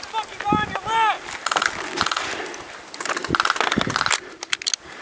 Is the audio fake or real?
real